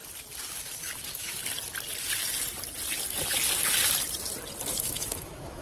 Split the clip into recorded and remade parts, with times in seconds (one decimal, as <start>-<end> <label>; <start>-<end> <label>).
0.0-0.5 recorded; 0.5-1.4 remade; 1.4-4.8 recorded; 4.8-5.6 remade